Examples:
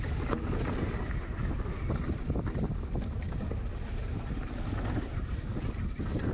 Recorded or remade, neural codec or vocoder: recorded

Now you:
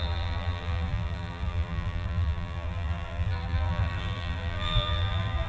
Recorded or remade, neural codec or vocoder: remade, vocoder, BigVGAN v2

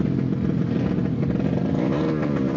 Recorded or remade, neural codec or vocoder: recorded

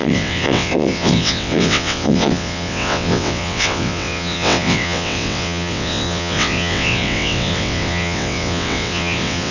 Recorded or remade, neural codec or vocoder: remade, vocoder, WaveNeXt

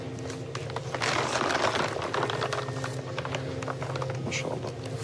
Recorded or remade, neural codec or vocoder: recorded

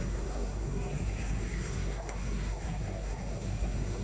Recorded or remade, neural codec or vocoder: remade, codec, SNAC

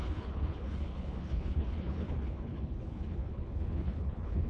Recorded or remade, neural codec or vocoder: remade, codec, HILCodec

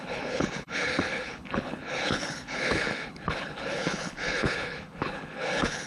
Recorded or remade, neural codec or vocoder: remade, codec, HILCodec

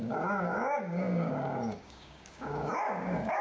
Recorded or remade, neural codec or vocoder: remade, codec, DAC